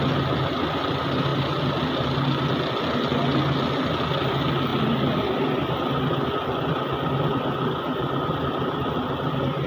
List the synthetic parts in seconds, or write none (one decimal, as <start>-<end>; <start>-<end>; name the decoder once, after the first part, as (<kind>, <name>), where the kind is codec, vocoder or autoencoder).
4.7-5.7 (vocoder, BigVGAN v2)